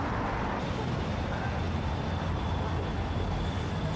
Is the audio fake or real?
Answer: real